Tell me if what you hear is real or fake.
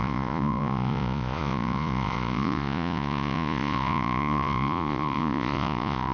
fake